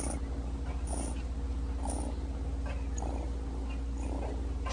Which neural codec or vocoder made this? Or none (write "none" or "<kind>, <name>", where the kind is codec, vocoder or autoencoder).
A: none